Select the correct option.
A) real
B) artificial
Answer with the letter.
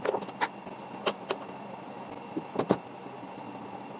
A